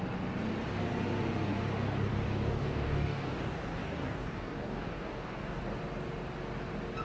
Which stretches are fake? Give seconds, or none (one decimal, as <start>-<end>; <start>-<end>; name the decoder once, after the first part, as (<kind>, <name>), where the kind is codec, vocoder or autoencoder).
2.1-5.6 (codec, DAC)